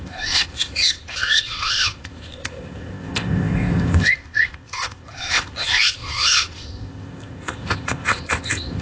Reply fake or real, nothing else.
fake